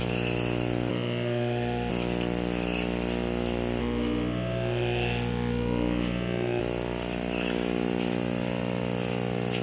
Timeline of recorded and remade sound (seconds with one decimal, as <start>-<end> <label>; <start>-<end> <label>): 0.0-0.9 recorded; 0.9-1.9 remade; 1.9-3.8 recorded; 3.8-6.6 remade; 6.6-9.6 recorded